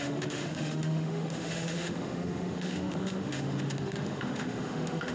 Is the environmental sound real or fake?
fake